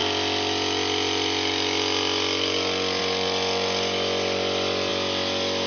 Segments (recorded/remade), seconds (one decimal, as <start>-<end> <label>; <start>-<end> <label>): 0.0-3.0 recorded; 3.0-5.7 remade

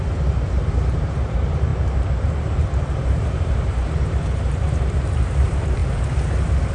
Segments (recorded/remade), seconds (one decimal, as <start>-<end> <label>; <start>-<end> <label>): 0.0-1.7 remade; 1.7-2.3 recorded; 2.3-6.7 remade